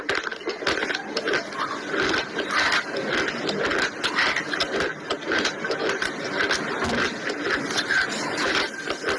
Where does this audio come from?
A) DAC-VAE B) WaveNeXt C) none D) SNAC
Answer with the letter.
C